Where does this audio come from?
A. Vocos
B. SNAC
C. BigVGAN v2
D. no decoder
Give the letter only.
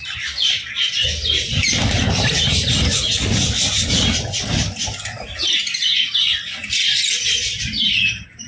D